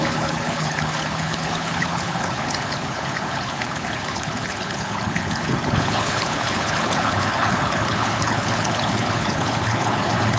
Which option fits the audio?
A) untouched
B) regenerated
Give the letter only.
B